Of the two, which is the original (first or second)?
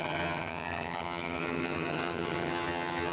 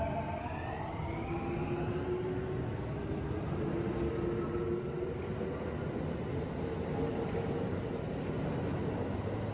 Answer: second